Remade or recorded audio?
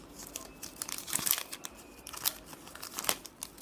recorded